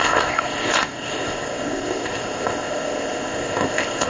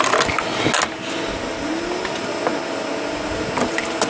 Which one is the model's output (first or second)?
first